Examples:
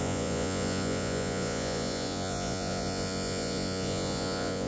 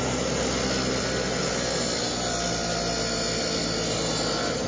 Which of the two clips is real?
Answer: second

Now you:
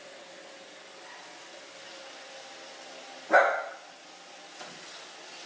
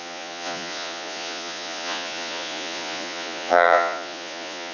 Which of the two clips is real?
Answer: first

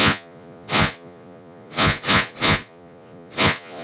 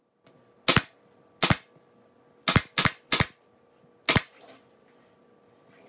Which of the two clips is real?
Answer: second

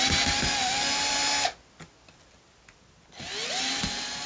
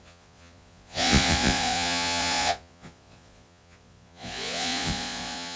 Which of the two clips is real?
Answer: first